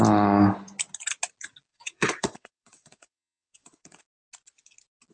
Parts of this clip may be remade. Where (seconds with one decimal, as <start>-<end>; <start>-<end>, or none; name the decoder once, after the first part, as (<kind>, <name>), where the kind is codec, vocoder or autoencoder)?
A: 1.7-4.0 (vocoder, WaveNeXt)